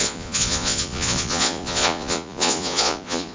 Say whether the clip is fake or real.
fake